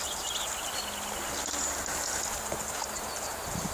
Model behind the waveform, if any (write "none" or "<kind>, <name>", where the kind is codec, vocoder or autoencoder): none